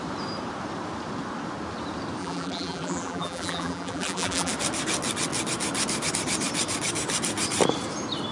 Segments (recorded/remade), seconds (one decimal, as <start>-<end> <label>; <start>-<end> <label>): 0.0-2.2 recorded; 2.2-4.5 remade; 4.5-8.3 recorded